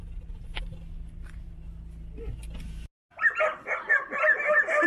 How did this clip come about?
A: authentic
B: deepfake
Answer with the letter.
A